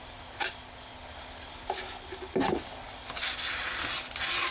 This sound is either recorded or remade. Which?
recorded